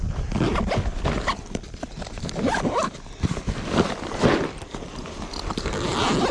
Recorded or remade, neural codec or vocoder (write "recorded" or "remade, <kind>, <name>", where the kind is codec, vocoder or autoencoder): recorded